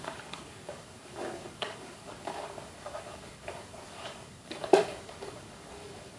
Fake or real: fake